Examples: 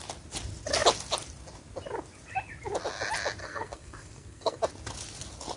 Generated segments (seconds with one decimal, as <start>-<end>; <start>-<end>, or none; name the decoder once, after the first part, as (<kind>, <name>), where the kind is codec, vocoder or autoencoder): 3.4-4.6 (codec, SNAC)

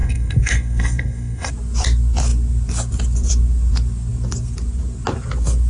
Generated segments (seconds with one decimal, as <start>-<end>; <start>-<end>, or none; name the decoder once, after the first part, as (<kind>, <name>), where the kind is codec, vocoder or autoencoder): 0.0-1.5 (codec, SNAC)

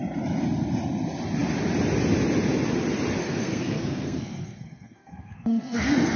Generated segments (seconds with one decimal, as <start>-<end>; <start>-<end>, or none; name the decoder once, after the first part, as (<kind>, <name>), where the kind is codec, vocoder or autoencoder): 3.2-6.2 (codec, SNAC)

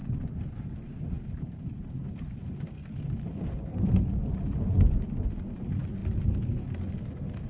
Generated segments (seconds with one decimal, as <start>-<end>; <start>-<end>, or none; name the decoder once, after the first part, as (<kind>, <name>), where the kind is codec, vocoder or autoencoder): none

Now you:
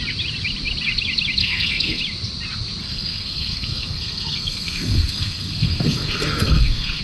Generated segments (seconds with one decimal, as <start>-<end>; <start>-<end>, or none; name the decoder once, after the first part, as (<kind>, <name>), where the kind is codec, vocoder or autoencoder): 1.4-2.0 (codec, SNAC); 2.8-7.0

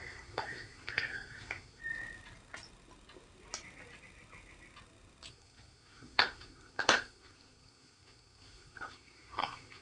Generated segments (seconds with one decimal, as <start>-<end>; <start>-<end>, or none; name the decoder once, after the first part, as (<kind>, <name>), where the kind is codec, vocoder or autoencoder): 0.0-1.8 (codec, SNAC); 5.3-9.8